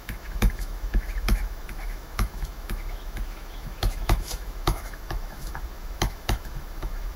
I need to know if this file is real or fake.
fake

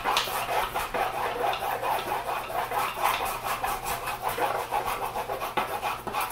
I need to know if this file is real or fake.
fake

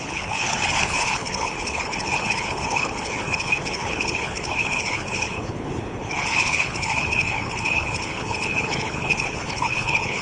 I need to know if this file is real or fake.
fake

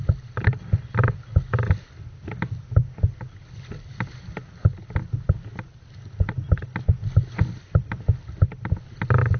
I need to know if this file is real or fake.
real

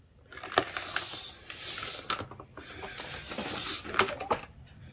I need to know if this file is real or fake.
real